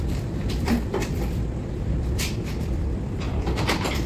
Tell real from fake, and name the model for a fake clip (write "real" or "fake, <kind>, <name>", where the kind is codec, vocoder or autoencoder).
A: fake, vocoder, BigVGAN v2